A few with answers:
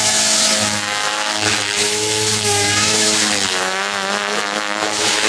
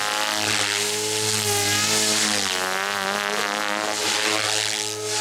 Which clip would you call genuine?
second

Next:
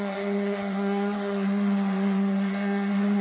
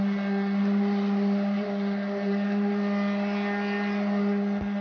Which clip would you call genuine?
second